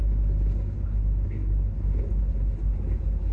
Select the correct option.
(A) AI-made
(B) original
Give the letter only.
B